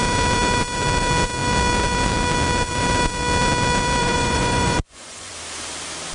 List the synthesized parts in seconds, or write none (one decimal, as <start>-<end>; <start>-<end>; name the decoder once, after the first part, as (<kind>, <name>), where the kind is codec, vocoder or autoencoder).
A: 4.0-5.3 (vocoder, Vocos)